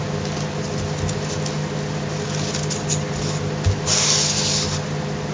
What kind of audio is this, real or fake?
real